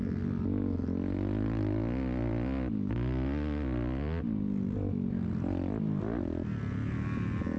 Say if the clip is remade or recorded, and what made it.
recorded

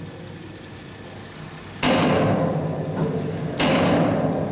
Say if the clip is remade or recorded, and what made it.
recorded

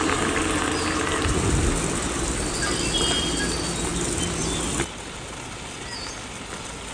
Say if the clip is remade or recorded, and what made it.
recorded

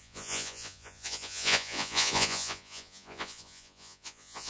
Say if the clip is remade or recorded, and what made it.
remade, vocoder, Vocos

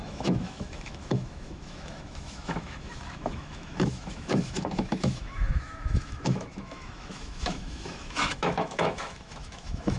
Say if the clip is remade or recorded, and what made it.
remade, autoencoder, DAC-VAE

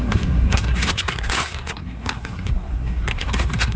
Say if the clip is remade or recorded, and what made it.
remade, codec, SNAC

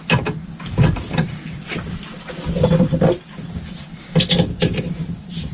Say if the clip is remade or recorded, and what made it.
recorded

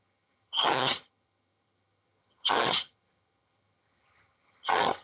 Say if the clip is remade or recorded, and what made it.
remade, vocoder, HiFi-GAN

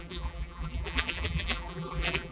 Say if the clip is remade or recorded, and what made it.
remade, vocoder, BigVGAN v2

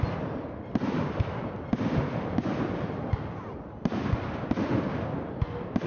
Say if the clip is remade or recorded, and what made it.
recorded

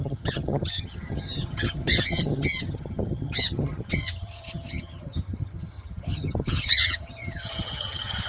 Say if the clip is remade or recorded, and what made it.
remade, vocoder, HiFi-GAN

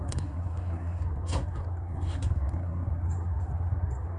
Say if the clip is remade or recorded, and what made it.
remade, codec, SNAC